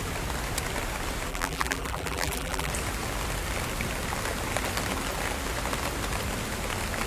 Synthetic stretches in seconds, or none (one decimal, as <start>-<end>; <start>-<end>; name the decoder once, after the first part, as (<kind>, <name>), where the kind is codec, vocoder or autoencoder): 1.3-2.7 (vocoder, BigVGAN v2)